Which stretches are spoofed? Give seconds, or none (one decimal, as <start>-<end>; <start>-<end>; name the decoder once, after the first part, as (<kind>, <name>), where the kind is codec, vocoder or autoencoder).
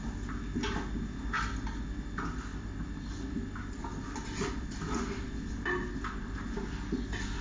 none